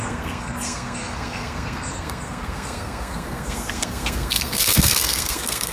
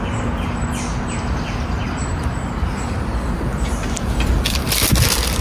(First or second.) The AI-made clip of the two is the first